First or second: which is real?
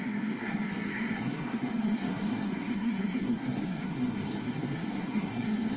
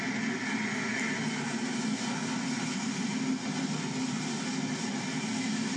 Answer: second